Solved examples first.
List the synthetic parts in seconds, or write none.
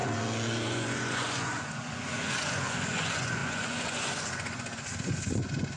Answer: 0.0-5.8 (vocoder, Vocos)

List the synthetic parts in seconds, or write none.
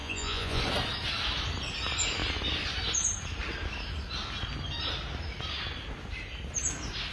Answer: 0.0-0.6 (vocoder, Vocos)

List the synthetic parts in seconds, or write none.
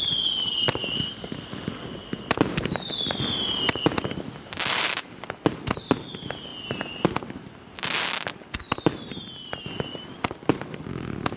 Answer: none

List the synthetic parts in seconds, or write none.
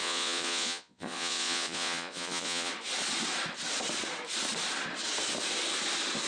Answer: 0.0-2.7 (vocoder, Vocos)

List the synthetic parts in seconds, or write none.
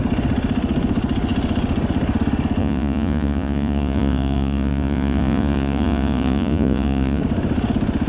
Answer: 2.6-7.2 (vocoder, Vocos)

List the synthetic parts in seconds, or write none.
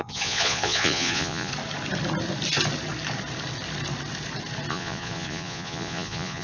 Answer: 0.0-1.5 (vocoder, Vocos); 4.7-6.4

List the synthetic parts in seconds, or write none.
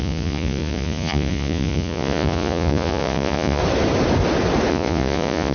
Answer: 0.0-3.6 (vocoder, Vocos); 4.7-5.5